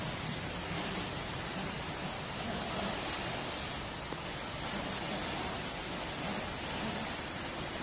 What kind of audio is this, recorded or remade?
recorded